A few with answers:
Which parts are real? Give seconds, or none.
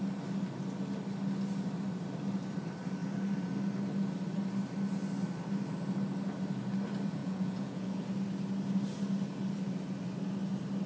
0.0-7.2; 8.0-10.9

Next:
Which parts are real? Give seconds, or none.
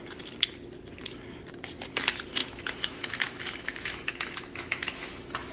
0.0-2.4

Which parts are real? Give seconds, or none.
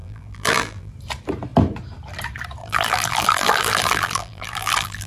0.9-2.6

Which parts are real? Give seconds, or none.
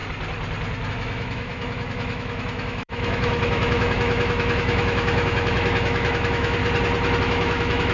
0.0-0.9; 6.6-7.2